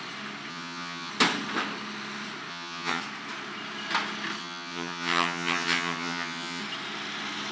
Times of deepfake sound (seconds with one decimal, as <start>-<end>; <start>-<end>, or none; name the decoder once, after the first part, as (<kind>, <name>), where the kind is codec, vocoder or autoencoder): 0.5-1.1 (vocoder, HiFi-GAN); 2.5-3.0; 4.4-6.6